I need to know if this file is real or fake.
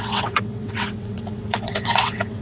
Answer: fake